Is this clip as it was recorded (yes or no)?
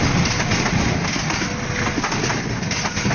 yes